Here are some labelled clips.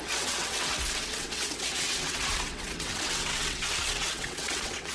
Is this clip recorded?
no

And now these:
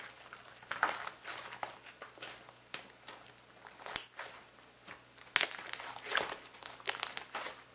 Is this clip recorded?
yes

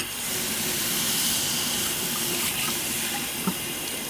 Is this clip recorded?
yes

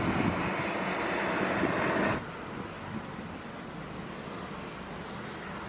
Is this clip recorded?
yes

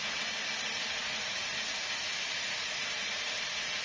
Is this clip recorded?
yes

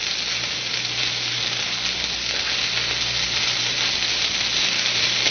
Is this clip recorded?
yes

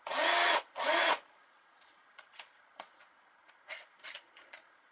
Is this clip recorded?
no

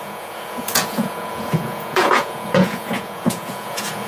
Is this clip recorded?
no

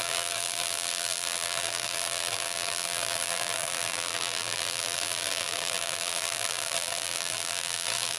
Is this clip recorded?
no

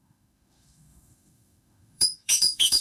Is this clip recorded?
no